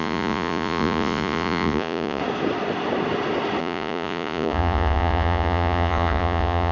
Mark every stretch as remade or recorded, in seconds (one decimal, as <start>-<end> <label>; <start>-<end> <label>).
0.0-2.2 remade; 2.2-3.6 recorded; 3.6-6.7 remade